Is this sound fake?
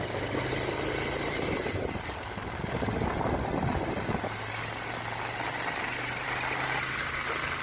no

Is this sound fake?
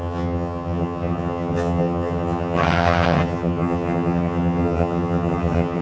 yes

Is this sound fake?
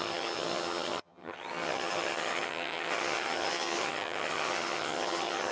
yes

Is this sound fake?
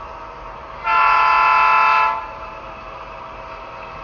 no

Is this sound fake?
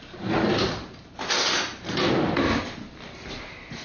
no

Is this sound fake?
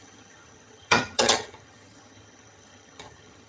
yes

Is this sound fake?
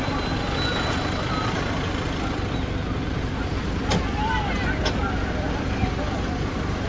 no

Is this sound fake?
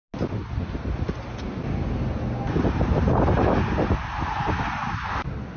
no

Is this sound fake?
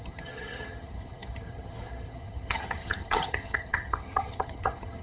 yes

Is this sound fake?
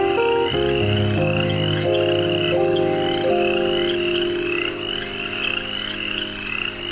no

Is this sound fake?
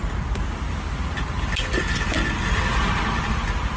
no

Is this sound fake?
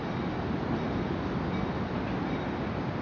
no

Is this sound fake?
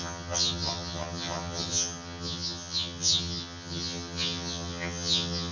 yes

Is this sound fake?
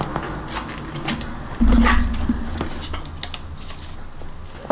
no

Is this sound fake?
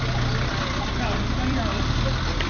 no